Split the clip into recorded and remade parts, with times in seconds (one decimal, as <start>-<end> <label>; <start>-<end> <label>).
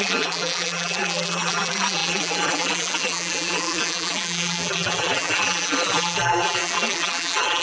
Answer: 0.0-7.6 remade